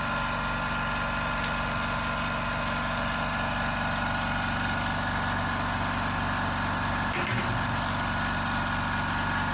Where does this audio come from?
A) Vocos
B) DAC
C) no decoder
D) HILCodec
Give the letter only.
C